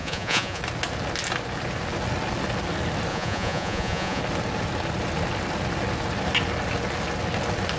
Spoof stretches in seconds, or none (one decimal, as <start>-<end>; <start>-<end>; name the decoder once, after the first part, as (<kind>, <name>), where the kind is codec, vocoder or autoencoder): 0.0-0.6 (vocoder, Vocos); 3.1-4.2